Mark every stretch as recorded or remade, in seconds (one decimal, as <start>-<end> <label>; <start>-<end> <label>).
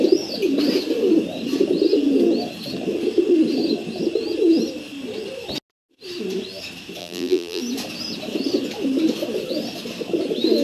0.0-7.0 recorded; 7.0-7.6 remade; 7.6-10.6 recorded